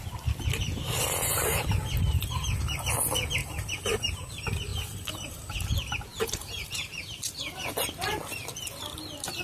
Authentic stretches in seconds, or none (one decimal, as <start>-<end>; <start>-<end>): 0.0-3.4; 4.3-4.7; 5.4-6.1; 7.7-9.4